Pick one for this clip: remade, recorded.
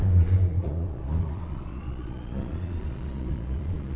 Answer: remade